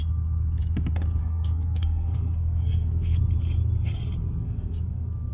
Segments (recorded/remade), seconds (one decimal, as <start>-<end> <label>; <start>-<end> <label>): 0.0-1.2 recorded; 1.2-3.2 remade; 3.2-4.4 recorded; 4.4-5.3 remade